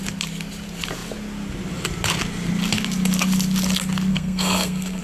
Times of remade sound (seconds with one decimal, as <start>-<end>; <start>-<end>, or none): 4.1-5.0